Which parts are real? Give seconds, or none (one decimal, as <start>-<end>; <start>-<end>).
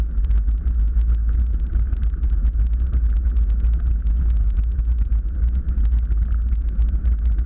0.0-7.5